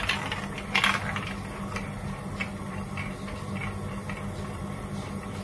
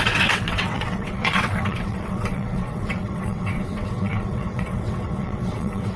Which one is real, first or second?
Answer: first